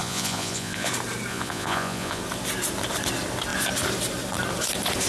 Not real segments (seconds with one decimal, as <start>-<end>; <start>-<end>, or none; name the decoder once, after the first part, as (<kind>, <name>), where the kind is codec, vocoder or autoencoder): 0.0-0.9 (vocoder, Vocos); 1.3-2.2